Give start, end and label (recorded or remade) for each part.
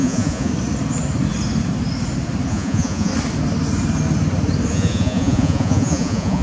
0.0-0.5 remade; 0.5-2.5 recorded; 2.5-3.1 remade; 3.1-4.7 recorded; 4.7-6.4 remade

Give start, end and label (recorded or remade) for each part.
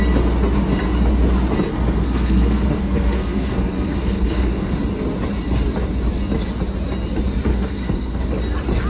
0.0-1.7 recorded; 1.7-4.7 remade; 4.7-7.5 recorded; 7.5-8.2 remade; 8.2-8.9 recorded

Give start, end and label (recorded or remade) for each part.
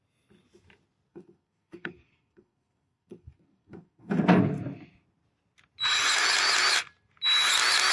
0.0-1.1 recorded; 1.1-4.2 remade; 4.2-7.9 recorded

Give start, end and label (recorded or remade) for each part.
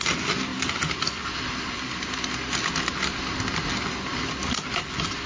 0.0-5.3 recorded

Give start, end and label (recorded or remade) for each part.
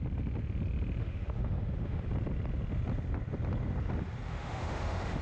0.0-1.0 recorded; 1.0-2.1 remade; 2.1-4.3 recorded; 4.3-5.2 remade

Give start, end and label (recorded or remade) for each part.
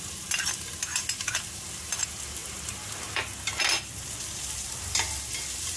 0.0-5.8 recorded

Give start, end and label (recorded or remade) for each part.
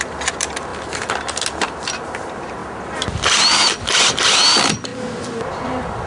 0.0-0.7 remade; 0.7-1.6 recorded; 1.6-2.6 remade; 2.6-3.8 recorded; 3.8-4.9 remade; 4.9-5.6 recorded; 5.6-6.1 remade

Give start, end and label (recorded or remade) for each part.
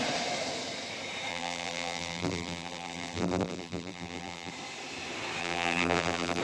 0.0-1.3 recorded; 1.3-4.5 remade; 4.5-5.4 recorded; 5.4-6.4 remade